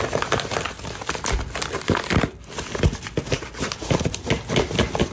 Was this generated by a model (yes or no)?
no